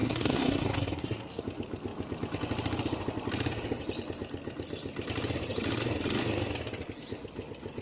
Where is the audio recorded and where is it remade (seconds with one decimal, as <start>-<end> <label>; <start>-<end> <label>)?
0.0-1.4 remade; 1.4-7.8 recorded